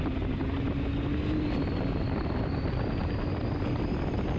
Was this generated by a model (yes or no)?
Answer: no